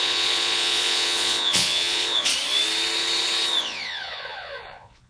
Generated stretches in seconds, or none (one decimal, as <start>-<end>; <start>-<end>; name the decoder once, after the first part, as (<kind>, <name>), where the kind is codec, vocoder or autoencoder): 0.0-2.3 (vocoder, Vocos); 3.6-5.1